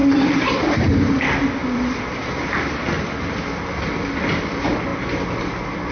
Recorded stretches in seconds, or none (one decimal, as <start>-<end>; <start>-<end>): 0.0-5.9